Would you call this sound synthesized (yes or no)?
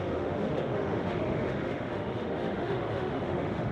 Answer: yes